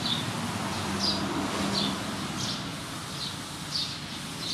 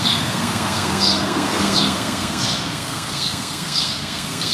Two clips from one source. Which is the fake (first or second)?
second